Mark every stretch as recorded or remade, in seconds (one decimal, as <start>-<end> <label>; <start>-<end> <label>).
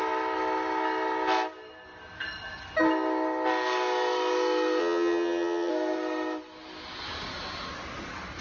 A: 0.0-4.8 recorded; 4.8-5.7 remade; 5.7-8.4 recorded